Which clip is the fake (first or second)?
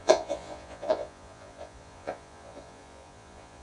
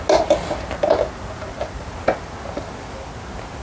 first